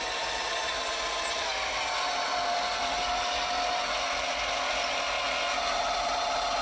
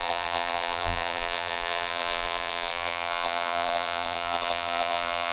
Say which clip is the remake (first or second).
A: second